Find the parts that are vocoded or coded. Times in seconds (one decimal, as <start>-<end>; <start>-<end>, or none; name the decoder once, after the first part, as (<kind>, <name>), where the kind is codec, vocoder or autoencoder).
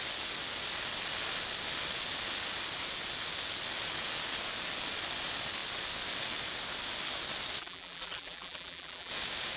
7.6-9.1 (vocoder, BigVGAN v2)